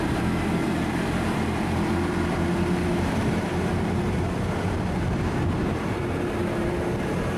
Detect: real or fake fake